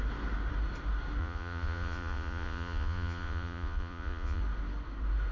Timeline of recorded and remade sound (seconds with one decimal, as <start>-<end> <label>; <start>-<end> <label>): 0.0-1.2 recorded; 1.2-4.4 remade; 4.4-5.3 recorded